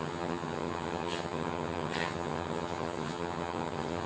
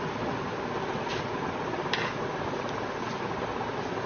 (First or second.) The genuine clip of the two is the second